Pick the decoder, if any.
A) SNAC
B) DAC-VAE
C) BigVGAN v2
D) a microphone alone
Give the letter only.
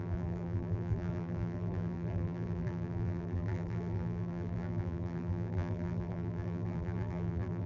C